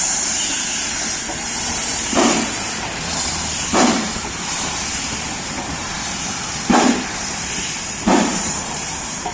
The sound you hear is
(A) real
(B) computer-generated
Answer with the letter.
B